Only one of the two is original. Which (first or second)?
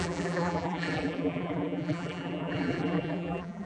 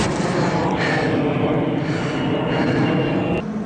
second